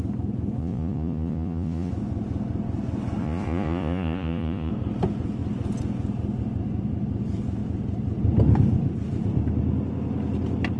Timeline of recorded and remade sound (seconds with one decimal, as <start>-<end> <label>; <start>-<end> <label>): 0.0-0.6 recorded; 0.6-1.9 remade; 1.9-3.2 recorded; 3.2-4.7 remade; 4.7-10.8 recorded